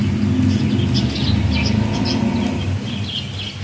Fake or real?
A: real